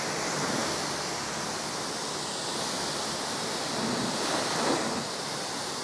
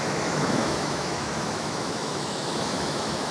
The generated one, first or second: second